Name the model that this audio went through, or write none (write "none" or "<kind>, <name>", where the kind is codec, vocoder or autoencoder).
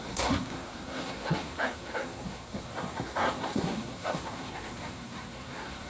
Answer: codec, SNAC